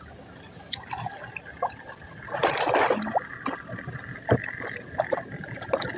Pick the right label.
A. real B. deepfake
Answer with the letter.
A